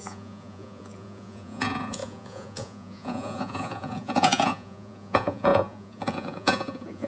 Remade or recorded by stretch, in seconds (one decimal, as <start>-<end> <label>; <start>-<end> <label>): 0.0-7.1 remade